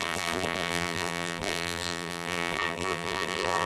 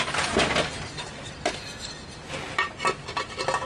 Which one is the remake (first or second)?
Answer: first